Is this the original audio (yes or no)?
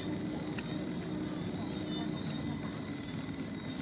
yes